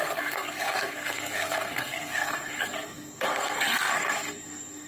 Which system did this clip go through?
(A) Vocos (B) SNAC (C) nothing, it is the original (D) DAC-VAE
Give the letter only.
B